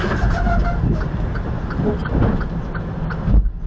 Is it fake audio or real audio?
real